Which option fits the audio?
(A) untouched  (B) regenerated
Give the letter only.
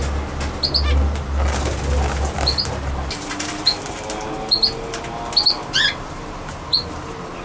A